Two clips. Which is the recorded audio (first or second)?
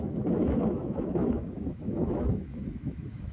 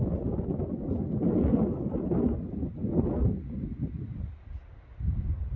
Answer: second